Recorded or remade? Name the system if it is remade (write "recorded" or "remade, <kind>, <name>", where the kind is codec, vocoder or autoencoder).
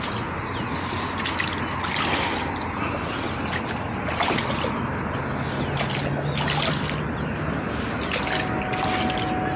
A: recorded